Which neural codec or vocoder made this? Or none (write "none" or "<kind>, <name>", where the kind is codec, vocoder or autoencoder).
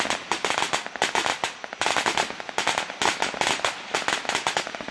none